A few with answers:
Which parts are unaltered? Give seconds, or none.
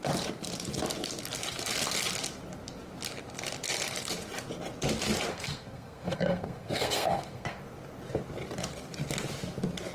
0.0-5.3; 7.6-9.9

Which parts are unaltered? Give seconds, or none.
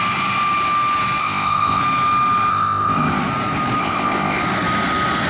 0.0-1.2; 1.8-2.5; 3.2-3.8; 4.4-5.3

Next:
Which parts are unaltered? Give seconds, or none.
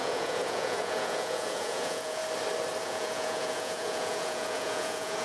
2.2-2.8